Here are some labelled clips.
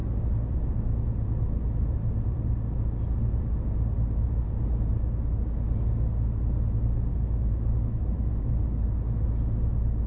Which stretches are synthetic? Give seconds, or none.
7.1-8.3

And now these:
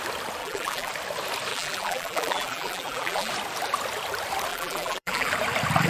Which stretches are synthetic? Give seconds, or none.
0.4-0.9; 1.5-3.3; 4.5-5.3

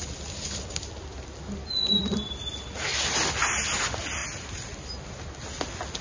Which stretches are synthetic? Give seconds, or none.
4.2-5.1

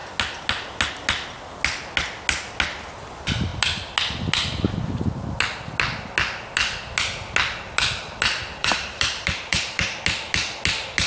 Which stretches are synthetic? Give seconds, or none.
8.6-10.0

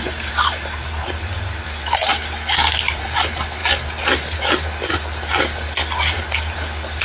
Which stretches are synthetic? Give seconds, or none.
0.0-2.1; 2.8-3.6

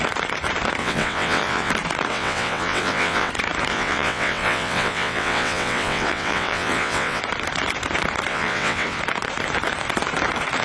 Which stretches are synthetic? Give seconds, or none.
0.8-1.7; 2.1-3.3; 3.7-7.2; 8.3-9.0

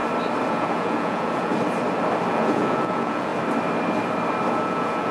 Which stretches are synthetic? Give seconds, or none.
0.5-1.5; 2.3-3.3; 4.5-5.1

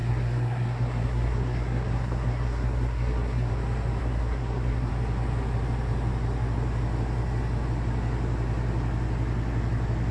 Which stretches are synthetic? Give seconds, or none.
0.0-3.5; 4.0-4.9